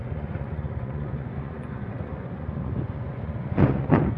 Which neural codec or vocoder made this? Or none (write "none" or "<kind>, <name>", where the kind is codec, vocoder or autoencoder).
vocoder, Vocos